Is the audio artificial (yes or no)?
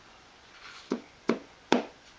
yes